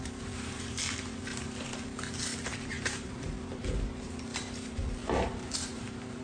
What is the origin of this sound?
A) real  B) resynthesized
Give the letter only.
B